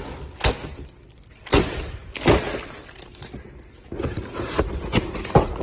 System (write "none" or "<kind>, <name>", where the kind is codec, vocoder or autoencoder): none